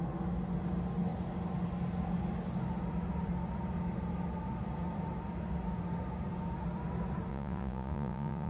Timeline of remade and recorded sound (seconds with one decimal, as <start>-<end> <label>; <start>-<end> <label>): 0.0-7.3 recorded; 7.3-8.5 remade